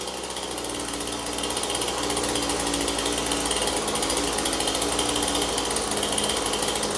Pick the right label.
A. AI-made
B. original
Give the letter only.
B